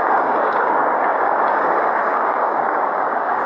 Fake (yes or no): yes